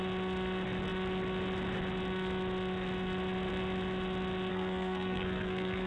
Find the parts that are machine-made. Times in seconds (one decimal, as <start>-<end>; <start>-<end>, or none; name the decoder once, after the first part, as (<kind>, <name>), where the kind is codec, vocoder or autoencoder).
4.5-5.9 (codec, SNAC)